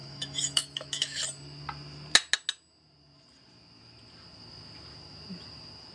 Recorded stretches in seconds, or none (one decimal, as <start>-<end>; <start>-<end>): 1.2-5.9